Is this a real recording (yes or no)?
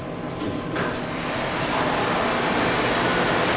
yes